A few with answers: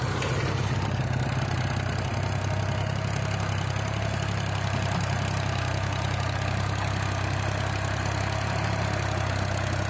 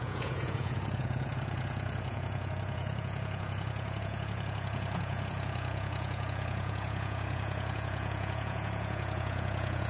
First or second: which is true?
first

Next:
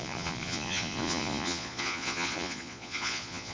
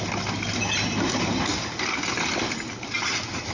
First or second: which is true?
second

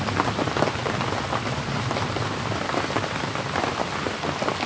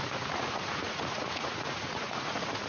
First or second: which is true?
first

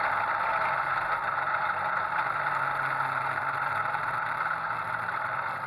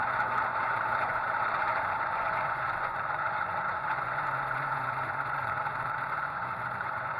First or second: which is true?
first